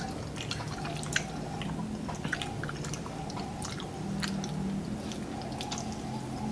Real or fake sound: real